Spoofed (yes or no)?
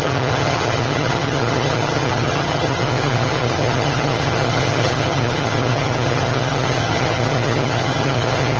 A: yes